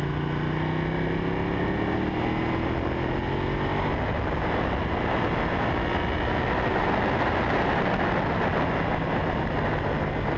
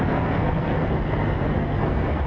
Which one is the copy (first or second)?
second